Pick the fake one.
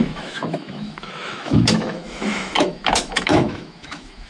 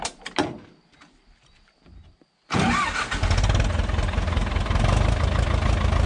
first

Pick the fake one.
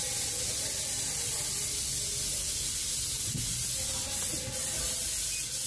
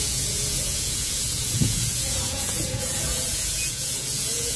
second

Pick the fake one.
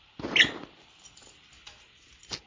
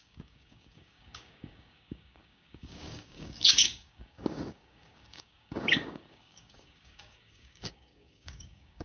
second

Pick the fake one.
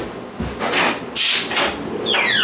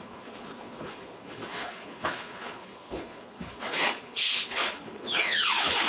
second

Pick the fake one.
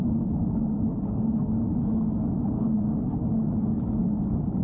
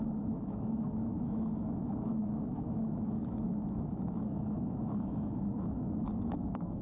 second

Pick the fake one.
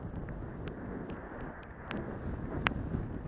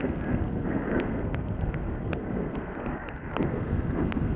second